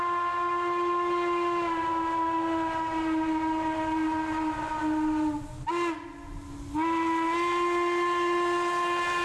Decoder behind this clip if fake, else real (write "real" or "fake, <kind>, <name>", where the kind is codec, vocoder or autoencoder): real